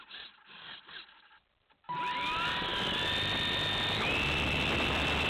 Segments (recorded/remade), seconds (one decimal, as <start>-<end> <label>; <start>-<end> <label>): 0.0-5.3 recorded